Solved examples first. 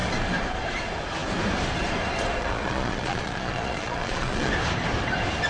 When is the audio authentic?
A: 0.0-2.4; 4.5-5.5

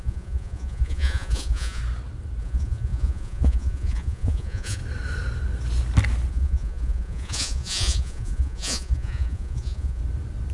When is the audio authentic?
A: 1.8-2.4; 4.8-6.3; 10.0-10.5

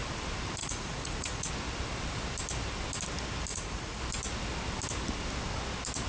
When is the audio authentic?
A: 0.0-0.6; 1.5-3.5; 4.0-6.1

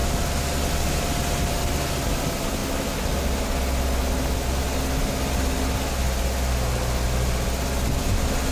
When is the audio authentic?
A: 0.0-8.5